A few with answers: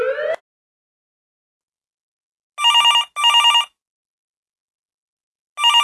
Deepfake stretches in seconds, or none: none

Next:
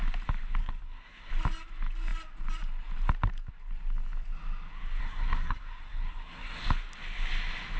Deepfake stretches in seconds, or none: 0.6-1.3 (codec, SNAC); 5.0-6.6

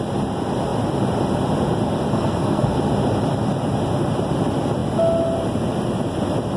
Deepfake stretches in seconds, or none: 2.1-2.8 (codec, SNAC)

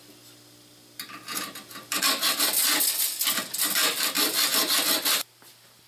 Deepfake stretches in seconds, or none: none

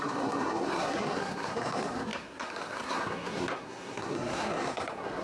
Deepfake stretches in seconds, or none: 0.0-5.2 (codec, SNAC)

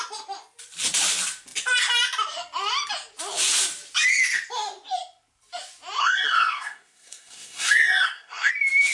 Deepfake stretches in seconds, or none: 6.0-8.5 (codec, SNAC)

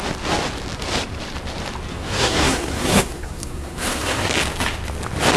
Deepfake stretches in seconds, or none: 1.9-4.3 (codec, SNAC)

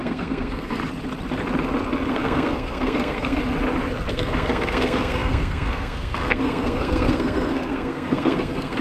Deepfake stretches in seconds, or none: 0.0-0.8 (codec, SNAC); 2.1-3.4; 4.1-8.8